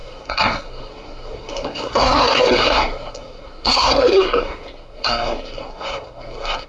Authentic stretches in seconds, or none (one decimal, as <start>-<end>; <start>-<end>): none